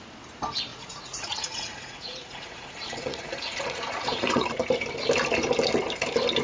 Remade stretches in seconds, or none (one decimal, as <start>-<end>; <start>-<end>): 0.7-4.5